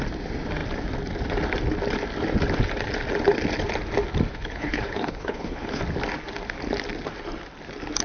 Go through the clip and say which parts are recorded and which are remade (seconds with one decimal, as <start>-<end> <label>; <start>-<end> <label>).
0.0-4.3 recorded; 4.3-5.8 remade; 5.8-8.0 recorded